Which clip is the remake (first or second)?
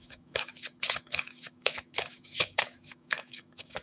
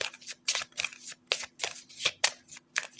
first